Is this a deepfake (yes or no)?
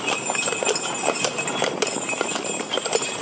no